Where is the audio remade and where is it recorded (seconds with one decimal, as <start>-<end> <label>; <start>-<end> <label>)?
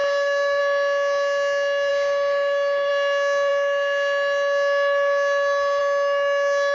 0.0-0.6 remade; 0.6-1.9 recorded; 1.9-2.9 remade; 2.9-6.7 recorded